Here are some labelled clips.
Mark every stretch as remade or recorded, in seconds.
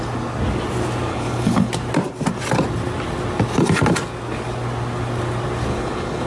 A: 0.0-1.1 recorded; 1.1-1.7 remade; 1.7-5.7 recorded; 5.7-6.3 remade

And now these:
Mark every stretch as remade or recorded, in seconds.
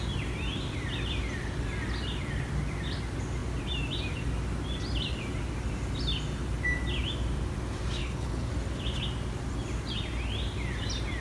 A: 0.0-8.0 recorded; 8.0-8.5 remade; 8.5-11.2 recorded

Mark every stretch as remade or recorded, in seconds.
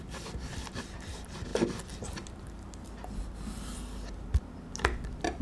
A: 0.0-5.4 recorded